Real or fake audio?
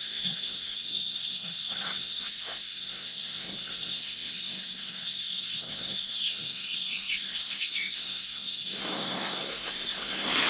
fake